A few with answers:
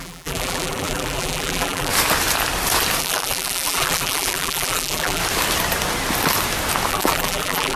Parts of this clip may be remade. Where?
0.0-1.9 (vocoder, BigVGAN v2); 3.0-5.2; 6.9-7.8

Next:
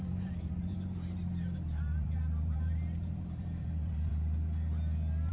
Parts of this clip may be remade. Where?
0.0-4.1 (vocoder, BigVGAN v2)

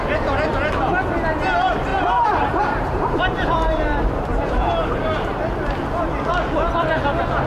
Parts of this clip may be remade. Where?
1.9-5.4 (vocoder, BigVGAN v2)

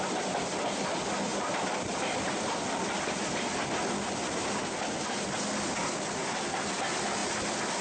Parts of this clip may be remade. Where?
1.3-3.5 (vocoder, BigVGAN v2)